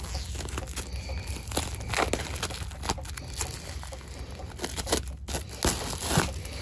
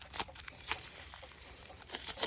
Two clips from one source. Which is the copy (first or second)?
second